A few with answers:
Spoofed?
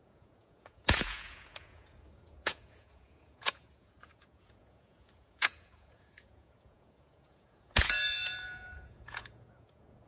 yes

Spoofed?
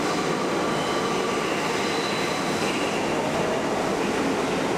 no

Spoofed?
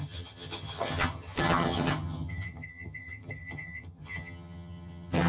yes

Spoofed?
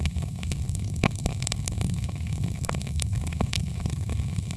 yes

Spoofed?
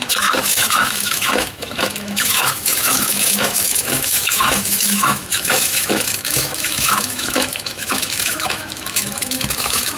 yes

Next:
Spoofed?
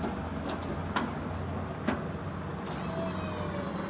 no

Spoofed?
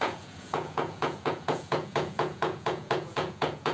yes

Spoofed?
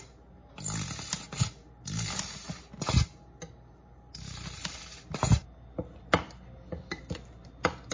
no